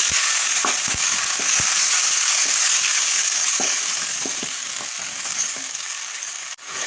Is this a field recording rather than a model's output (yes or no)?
no